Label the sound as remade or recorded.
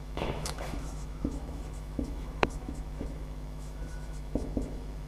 remade